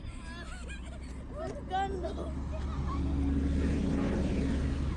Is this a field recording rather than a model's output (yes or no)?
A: yes